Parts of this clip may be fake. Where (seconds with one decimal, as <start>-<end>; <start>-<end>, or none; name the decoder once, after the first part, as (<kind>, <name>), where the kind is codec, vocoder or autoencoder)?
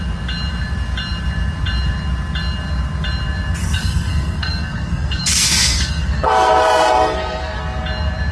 3.6-7.6 (codec, SNAC)